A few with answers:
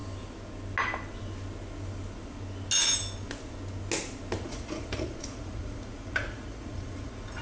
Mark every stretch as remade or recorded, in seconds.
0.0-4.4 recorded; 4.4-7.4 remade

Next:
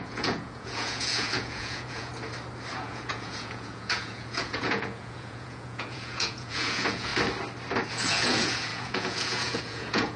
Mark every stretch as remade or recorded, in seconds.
0.0-2.1 remade; 2.1-2.7 recorded; 2.7-7.1 remade; 7.1-7.9 recorded; 7.9-10.2 remade

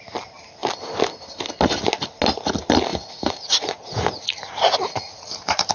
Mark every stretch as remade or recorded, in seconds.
0.0-2.9 recorded; 2.9-5.7 remade

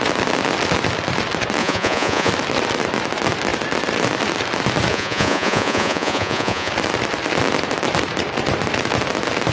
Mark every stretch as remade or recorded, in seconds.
0.0-1.6 recorded; 1.6-2.3 remade; 2.3-4.9 recorded; 4.9-6.7 remade; 6.7-9.5 recorded

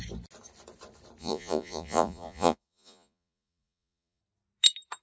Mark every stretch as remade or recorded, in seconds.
0.0-1.2 recorded; 1.2-4.2 remade; 4.2-5.0 recorded

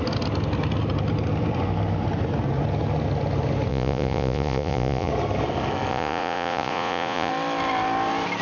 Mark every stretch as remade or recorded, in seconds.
0.0-3.7 recorded; 3.7-5.1 remade; 5.1-5.9 recorded; 5.9-7.3 remade; 7.3-8.4 recorded

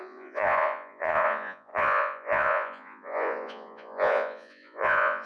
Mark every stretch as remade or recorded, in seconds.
0.0-5.3 remade

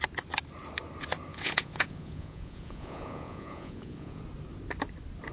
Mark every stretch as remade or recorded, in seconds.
0.0-1.3 recorded; 1.3-4.2 remade; 4.2-5.3 recorded